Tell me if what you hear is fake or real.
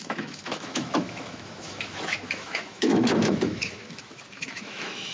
fake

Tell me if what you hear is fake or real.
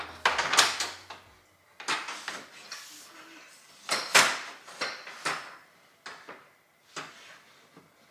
real